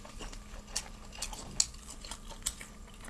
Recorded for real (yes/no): yes